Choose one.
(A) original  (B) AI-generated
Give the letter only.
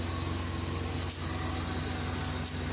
A